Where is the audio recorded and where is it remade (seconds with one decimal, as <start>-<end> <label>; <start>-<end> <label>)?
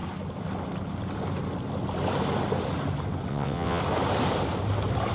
0.0-3.3 recorded; 3.3-3.8 remade; 3.8-5.1 recorded